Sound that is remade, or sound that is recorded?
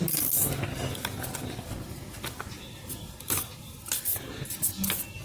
recorded